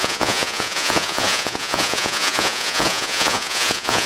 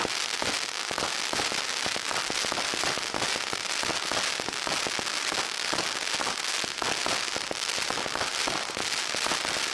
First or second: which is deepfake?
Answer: first